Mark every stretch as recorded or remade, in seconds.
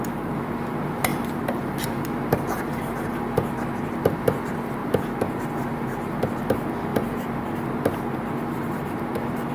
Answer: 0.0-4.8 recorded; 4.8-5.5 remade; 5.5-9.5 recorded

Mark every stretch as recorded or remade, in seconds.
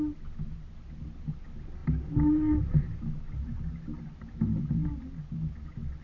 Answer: 0.0-6.0 recorded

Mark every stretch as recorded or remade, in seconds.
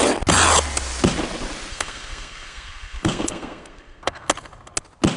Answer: 0.0-1.7 recorded; 1.7-4.3 remade; 4.3-5.2 recorded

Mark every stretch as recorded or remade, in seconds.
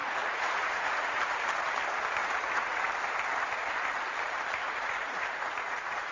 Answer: 0.0-1.2 remade; 1.2-2.2 recorded; 2.2-2.8 remade; 2.8-4.6 recorded; 4.6-6.1 remade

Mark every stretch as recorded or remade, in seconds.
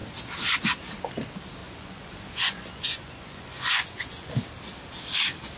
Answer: 0.0-1.6 recorded; 1.6-4.3 remade; 4.3-5.6 recorded